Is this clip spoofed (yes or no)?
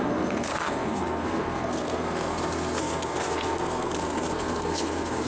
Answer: yes